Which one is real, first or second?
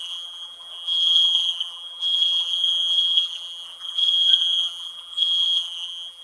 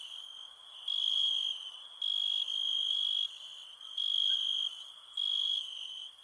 second